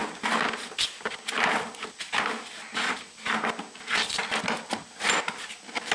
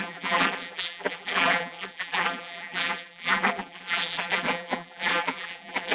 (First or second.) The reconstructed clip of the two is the second